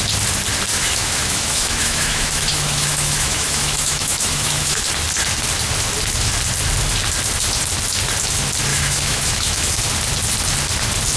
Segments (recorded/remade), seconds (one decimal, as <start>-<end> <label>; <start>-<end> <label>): 0.0-0.7 recorded; 0.7-4.8 remade; 4.8-8.7 recorded; 8.7-9.8 remade; 9.8-11.2 recorded